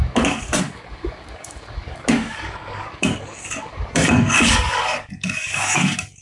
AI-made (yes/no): yes